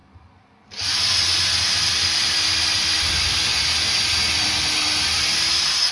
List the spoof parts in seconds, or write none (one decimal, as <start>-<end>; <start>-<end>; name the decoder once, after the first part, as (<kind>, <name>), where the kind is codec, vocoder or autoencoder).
0.0-3.5 (vocoder, BigVGAN v2); 4.4-5.9